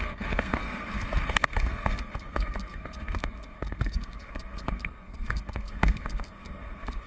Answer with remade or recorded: remade